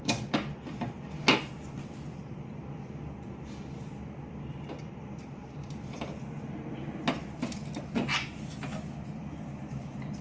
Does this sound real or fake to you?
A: real